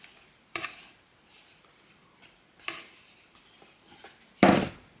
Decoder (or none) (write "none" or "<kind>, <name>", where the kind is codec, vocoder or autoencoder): none